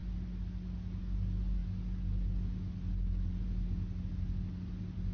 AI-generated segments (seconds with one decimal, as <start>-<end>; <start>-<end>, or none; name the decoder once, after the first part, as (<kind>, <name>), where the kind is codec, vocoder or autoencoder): none